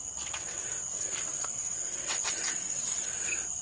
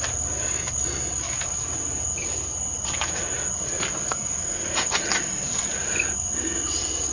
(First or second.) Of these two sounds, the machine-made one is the first